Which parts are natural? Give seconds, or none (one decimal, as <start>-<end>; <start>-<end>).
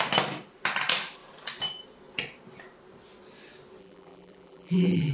0.0-3.8